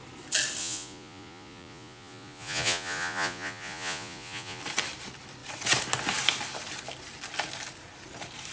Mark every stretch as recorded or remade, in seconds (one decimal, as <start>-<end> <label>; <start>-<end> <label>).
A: 0.0-0.6 recorded; 0.6-4.6 remade; 4.6-8.5 recorded